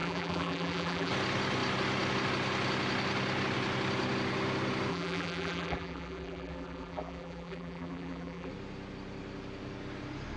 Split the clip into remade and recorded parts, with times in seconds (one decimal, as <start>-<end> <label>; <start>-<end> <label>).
0.0-1.1 remade; 1.1-4.9 recorded; 4.9-8.5 remade; 8.5-10.4 recorded